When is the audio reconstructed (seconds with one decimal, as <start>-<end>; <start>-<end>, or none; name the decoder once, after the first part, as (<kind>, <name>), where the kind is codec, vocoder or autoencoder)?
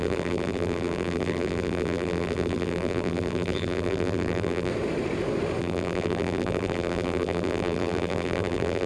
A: 0.0-4.7 (vocoder, BigVGAN v2); 5.6-8.9